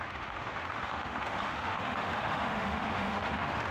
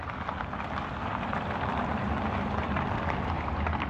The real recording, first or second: second